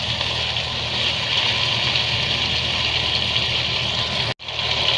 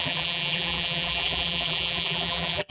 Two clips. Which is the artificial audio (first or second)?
second